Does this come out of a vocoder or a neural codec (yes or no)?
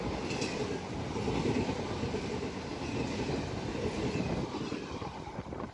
no